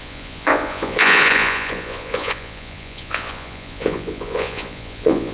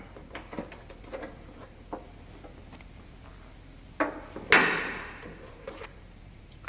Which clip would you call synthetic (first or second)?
first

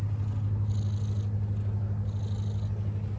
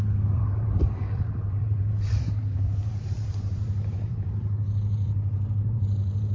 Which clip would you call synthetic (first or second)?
second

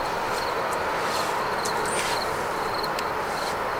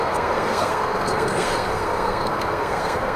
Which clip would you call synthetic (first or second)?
second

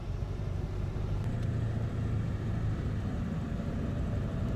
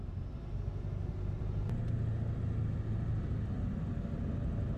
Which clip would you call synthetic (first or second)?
first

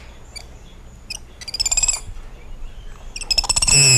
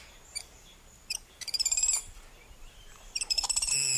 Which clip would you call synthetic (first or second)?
second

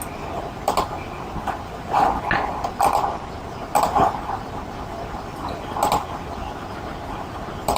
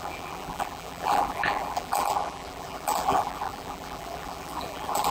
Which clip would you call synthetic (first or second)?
second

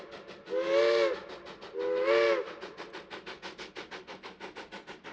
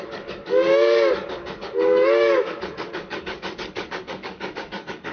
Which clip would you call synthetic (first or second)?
second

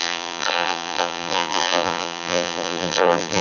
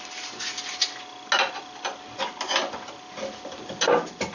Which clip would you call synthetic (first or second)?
first